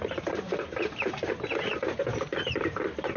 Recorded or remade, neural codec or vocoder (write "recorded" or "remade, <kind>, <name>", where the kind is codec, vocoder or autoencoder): remade, vocoder, BigVGAN v2